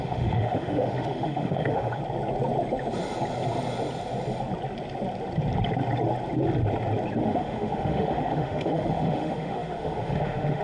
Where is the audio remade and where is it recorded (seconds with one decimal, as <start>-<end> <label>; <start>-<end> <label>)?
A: 0.0-2.0 remade; 2.0-7.2 recorded; 7.2-10.6 remade